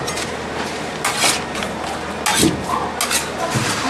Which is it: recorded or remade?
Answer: recorded